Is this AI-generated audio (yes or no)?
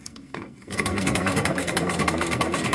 yes